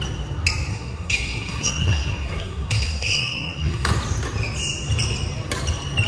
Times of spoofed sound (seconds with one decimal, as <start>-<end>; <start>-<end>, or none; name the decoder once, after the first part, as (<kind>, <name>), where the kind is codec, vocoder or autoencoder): 0.7-3.9 (codec, SNAC)